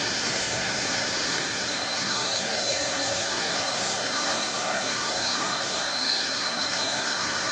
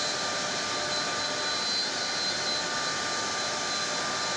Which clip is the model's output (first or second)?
first